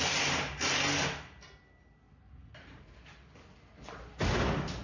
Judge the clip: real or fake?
real